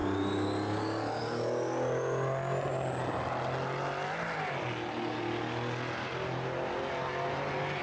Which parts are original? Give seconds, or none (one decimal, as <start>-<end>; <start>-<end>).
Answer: 0.0-7.8